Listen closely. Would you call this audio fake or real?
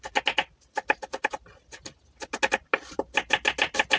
real